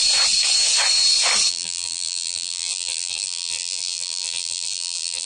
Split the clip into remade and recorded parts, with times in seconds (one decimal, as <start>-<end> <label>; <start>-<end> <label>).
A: 0.0-1.5 recorded; 1.5-5.3 remade